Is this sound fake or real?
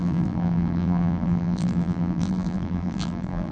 fake